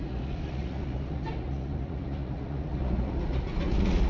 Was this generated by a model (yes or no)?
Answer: yes